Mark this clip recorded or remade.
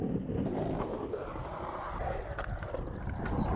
recorded